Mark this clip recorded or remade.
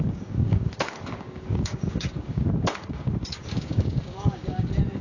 remade